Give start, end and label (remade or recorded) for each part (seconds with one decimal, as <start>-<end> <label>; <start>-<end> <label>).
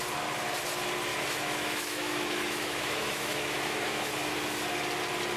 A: 0.0-1.1 recorded; 1.1-4.1 remade; 4.1-5.4 recorded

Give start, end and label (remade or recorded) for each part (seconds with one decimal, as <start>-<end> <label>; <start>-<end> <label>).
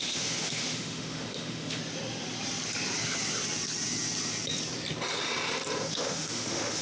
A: 0.0-1.8 remade; 1.8-5.9 recorded; 5.9-6.8 remade